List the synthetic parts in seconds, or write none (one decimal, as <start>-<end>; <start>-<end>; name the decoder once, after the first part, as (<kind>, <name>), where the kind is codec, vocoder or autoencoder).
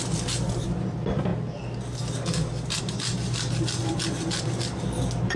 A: none